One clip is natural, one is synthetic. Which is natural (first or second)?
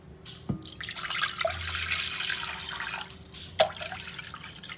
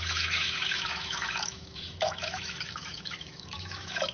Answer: first